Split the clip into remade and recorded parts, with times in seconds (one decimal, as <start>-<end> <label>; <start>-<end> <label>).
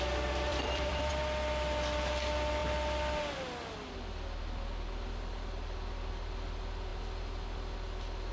0.0-0.5 recorded; 0.5-1.1 remade; 1.1-8.3 recorded